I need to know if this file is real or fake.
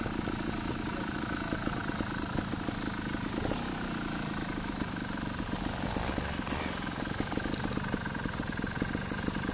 real